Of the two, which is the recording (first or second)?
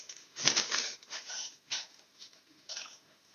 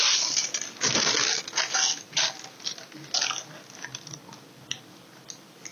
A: second